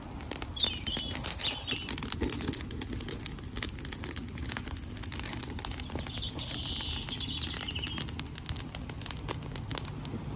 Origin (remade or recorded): recorded